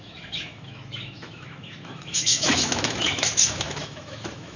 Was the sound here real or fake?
fake